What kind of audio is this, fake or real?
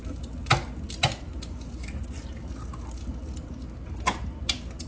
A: real